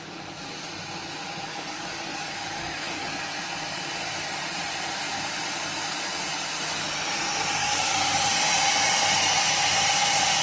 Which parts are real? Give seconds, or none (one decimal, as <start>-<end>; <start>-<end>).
0.0-1.5; 3.1-7.6; 8.3-10.4